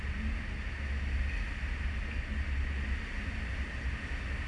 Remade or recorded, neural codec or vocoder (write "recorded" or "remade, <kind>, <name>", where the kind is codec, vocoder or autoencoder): recorded